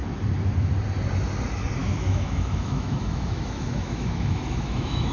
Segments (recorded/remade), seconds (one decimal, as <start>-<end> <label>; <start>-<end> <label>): 0.0-1.8 recorded; 1.8-5.1 remade